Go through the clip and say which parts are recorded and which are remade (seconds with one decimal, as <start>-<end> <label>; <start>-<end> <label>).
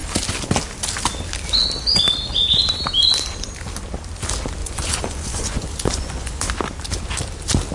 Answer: 0.0-4.6 recorded; 4.6-6.4 remade; 6.4-7.7 recorded